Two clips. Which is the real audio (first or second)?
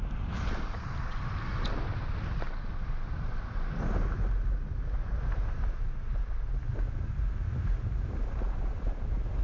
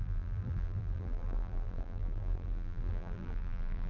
first